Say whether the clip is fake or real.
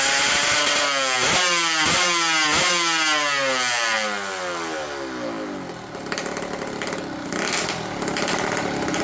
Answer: real